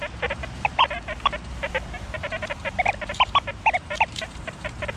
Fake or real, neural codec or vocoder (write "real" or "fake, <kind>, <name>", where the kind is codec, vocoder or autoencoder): fake, vocoder, BigVGAN v2